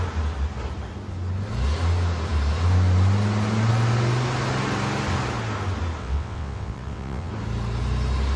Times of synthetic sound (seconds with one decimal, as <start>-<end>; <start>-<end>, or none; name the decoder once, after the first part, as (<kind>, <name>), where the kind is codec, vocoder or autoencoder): 6.0-7.3 (vocoder, WaveNeXt)